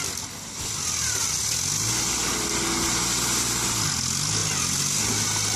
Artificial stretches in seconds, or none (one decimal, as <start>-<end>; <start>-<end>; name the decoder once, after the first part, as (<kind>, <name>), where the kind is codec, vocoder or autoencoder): none